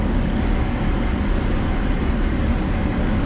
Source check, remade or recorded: remade